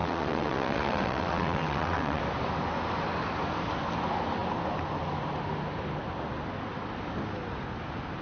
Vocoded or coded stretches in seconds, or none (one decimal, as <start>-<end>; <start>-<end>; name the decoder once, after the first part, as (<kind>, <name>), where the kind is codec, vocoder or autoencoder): 0.0-2.2 (vocoder, WaveNeXt)